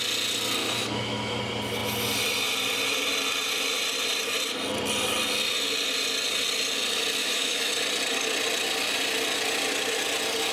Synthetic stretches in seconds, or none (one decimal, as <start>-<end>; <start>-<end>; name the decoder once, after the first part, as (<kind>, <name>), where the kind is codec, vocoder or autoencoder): 0.6-1.4 (autoencoder, DAC-VAE); 7.2-7.7